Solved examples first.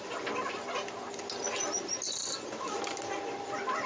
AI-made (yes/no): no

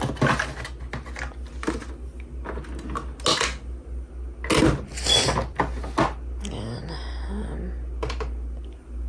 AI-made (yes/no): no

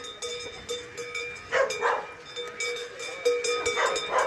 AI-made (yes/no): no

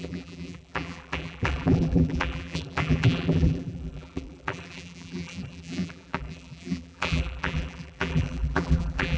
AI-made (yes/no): yes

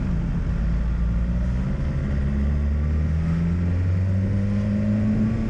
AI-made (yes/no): no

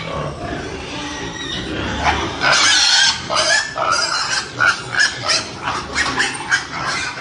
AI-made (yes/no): no